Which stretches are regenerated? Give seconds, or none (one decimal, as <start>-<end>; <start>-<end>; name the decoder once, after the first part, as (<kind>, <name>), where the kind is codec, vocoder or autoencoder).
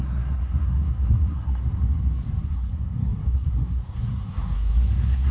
0.0-1.6 (codec, SNAC); 2.4-5.3